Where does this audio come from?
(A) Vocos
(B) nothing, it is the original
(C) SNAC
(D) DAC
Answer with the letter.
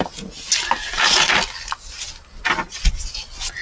B